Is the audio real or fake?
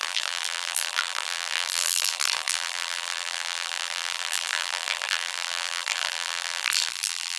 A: fake